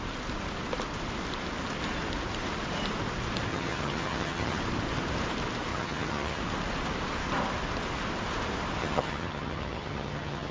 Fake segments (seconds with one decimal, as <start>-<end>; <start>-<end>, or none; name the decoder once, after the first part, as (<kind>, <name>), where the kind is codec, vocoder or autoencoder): 3.5-4.6 (vocoder, HiFi-GAN); 5.7-6.4; 8.8-10.5